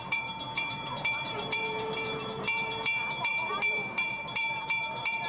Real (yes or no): no